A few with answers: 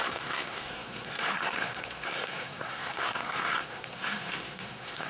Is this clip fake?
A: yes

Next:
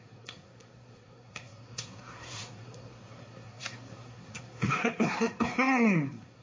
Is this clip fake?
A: yes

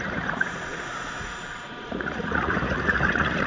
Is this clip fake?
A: yes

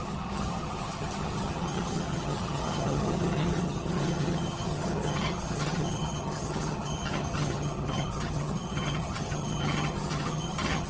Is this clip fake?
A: yes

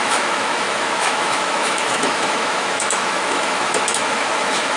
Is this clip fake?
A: yes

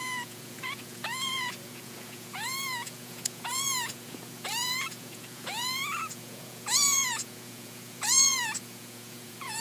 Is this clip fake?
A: yes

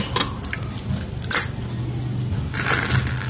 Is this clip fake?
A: no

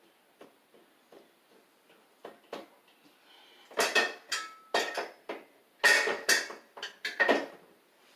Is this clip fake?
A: no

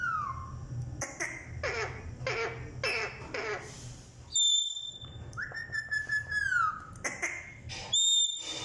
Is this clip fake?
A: no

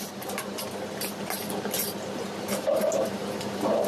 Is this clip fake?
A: no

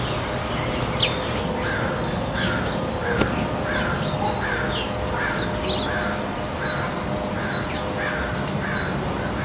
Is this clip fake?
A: no